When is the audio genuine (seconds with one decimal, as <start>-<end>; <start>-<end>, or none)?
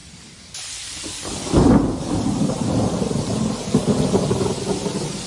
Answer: 3.2-5.3